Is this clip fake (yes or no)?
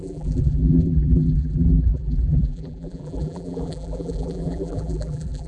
yes